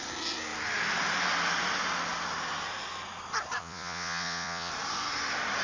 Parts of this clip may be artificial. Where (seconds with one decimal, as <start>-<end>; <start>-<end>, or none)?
3.6-4.7